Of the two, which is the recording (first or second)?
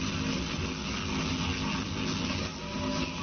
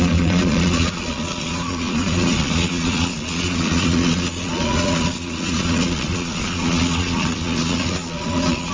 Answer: first